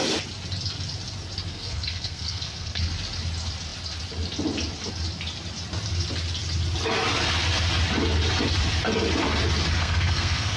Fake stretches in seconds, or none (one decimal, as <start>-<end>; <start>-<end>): 1.5-2.8; 9.8-10.6